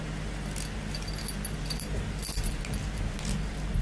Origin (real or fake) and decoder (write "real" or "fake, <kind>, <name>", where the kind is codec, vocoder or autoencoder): real